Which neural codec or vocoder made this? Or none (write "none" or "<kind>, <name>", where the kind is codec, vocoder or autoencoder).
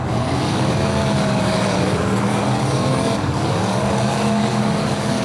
codec, DAC